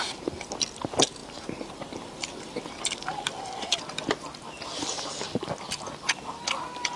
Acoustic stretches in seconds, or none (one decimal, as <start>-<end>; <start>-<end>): 0.0-7.0